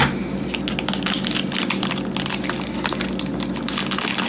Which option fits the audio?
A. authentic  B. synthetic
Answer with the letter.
A